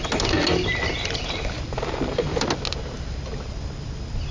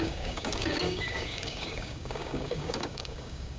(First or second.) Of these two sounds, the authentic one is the first